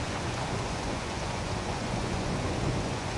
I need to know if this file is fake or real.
fake